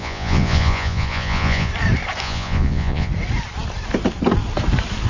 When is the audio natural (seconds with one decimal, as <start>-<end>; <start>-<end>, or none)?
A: 1.7-2.2; 3.1-5.1